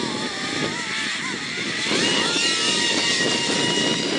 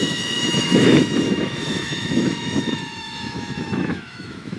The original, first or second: first